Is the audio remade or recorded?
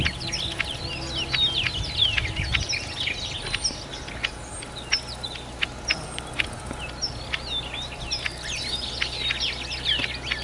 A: recorded